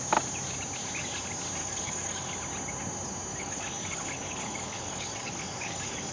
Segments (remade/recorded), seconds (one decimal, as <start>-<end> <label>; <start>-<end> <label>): 0.0-1.6 recorded; 1.6-2.3 remade; 2.3-3.3 recorded; 3.3-6.1 remade